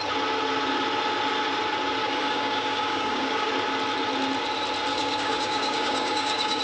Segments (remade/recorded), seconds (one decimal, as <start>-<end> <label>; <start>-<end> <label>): 0.0-2.0 recorded; 2.0-3.5 remade; 3.5-4.9 recorded; 4.9-6.6 remade